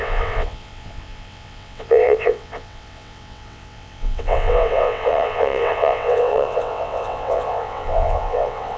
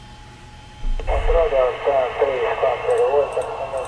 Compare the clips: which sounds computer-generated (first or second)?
first